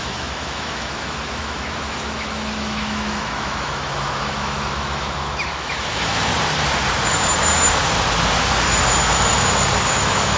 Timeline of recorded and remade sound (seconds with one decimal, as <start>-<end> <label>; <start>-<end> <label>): 0.0-6.3 remade; 6.3-9.9 recorded; 9.9-10.4 remade